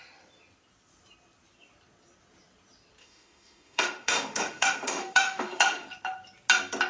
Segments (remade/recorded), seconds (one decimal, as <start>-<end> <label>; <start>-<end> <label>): 0.0-3.0 recorded; 3.0-5.9 remade; 5.9-6.9 recorded